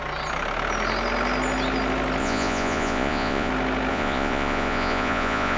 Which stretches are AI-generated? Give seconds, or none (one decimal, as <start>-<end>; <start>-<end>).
2.2-3.5; 3.9-5.6